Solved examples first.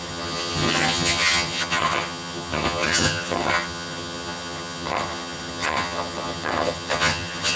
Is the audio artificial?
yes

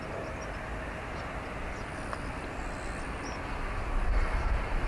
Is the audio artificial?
no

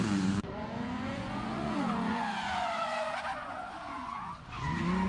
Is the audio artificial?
yes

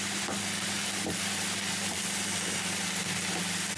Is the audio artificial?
no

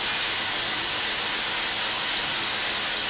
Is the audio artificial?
no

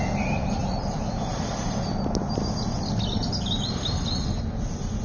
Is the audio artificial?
no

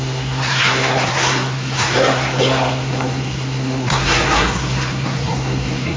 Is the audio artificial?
yes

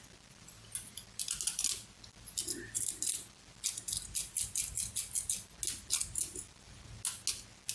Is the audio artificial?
no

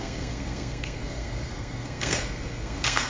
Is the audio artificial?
yes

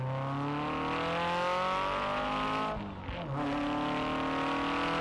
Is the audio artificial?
no